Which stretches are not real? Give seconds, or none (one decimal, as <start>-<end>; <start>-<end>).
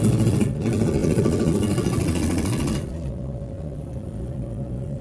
0.0-5.0